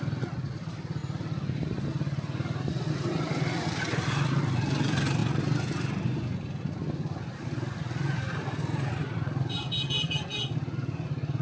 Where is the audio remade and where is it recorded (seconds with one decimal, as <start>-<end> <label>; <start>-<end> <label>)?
0.0-11.4 recorded